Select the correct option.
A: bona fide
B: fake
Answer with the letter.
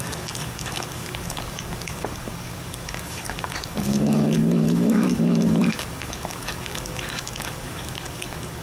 B